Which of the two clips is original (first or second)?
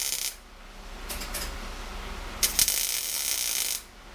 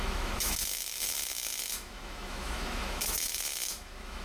first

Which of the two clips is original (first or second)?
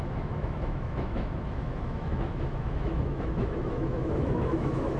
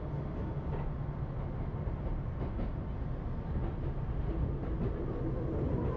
second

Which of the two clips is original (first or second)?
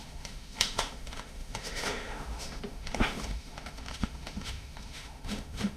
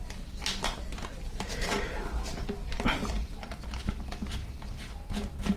second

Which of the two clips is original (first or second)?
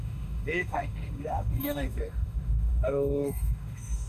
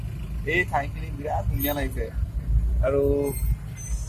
second